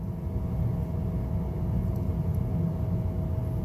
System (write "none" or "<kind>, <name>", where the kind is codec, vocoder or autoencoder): none